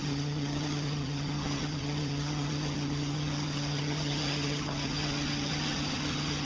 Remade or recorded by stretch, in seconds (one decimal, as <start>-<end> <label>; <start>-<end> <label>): 0.0-6.4 remade